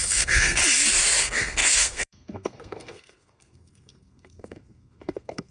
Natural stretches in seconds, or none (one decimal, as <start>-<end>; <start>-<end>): 0.6-1.2